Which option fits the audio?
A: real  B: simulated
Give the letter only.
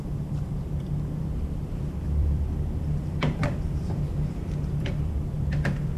B